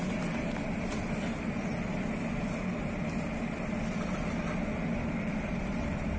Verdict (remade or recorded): recorded